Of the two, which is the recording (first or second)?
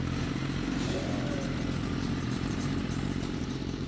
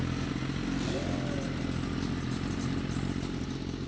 second